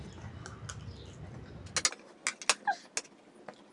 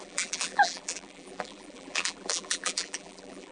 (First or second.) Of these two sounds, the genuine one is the first